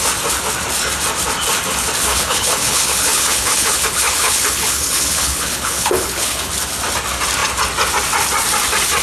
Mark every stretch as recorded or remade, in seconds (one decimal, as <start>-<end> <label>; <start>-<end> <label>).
0.0-2.1 recorded; 2.1-6.5 remade; 6.5-9.0 recorded